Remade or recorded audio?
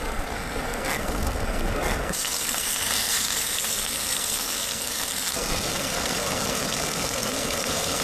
remade